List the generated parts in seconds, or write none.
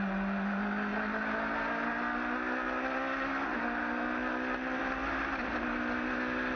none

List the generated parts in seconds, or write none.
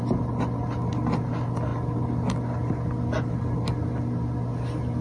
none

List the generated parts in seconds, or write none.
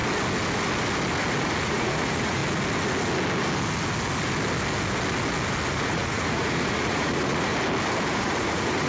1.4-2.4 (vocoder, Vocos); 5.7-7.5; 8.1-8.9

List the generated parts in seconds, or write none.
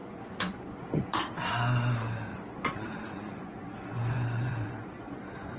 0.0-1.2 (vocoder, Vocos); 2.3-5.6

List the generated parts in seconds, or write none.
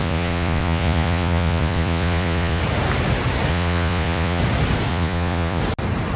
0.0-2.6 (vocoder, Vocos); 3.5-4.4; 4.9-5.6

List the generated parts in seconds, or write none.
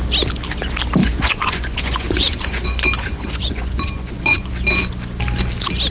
1.0-4.5 (vocoder, Vocos)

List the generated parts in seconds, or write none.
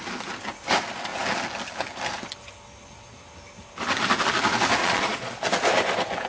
4.8-5.4 (vocoder, Vocos)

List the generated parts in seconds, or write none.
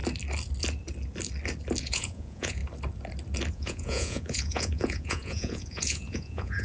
1.8-2.6 (vocoder, Vocos); 3.5-6.6